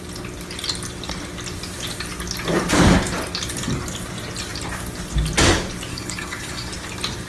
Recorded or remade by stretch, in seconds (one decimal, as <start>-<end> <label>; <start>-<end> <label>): 0.0-5.9 recorded; 5.9-6.7 remade; 6.7-7.3 recorded